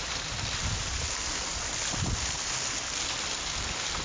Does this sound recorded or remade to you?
recorded